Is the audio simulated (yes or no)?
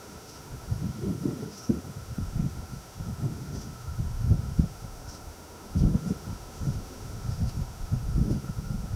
yes